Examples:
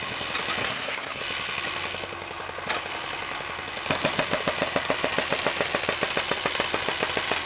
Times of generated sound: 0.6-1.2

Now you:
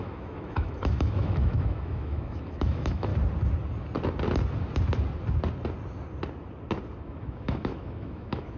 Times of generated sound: 0.0-3.1; 7.0-8.6

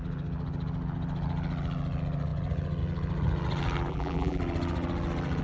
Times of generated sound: 3.9-4.4

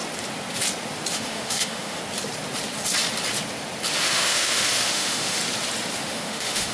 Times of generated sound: 1.1-2.0; 4.0-5.4; 6.0-6.7

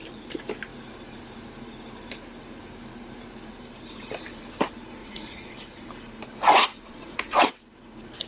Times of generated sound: 5.0-5.5; 6.6-7.5

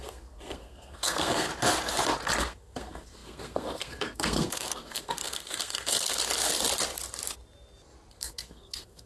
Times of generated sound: 0.0-1.5; 2.4-6.2; 8.1-9.1

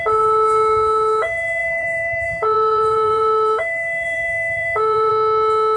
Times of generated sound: 1.6-5.1